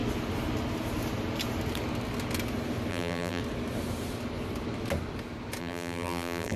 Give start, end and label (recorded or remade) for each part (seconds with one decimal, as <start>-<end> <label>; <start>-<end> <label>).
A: 0.0-2.9 recorded; 2.9-3.4 remade; 3.4-5.6 recorded; 5.6-6.6 remade